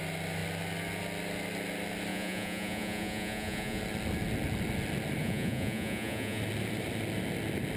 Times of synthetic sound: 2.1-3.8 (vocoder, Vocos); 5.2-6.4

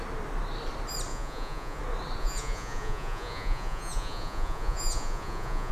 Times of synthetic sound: 1.1-1.8 (vocoder, Vocos); 2.2-5.7

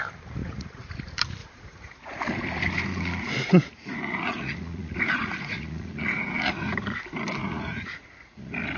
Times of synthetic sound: 0.4-0.9 (vocoder, Vocos); 1.4-2.2; 2.9-6.5; 7.4-8.4

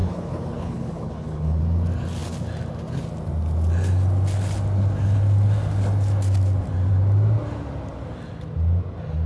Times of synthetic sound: 0.0-1.6 (codec, HILCodec)